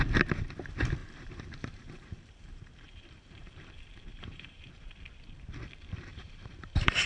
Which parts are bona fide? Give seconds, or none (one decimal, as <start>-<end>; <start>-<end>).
0.0-1.0; 3.6-4.1; 4.6-6.1